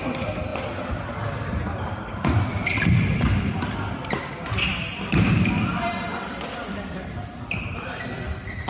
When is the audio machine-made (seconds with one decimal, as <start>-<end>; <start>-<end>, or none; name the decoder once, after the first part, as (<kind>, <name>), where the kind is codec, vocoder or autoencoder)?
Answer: none